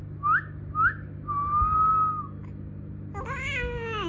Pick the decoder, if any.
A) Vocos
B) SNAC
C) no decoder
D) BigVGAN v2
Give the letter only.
C